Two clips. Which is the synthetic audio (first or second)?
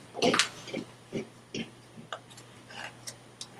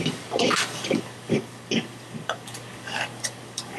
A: second